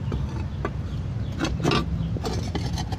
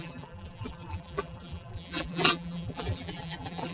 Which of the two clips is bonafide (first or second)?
first